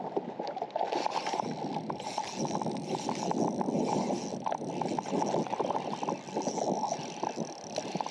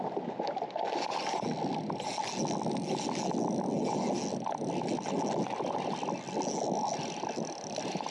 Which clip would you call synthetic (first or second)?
first